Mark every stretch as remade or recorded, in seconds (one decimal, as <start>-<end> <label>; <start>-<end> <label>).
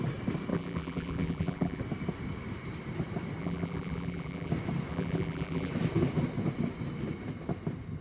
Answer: 0.0-0.5 recorded; 0.5-1.8 remade; 1.8-3.4 recorded; 3.4-4.5 remade; 4.5-4.9 recorded; 4.9-5.7 remade; 5.7-8.0 recorded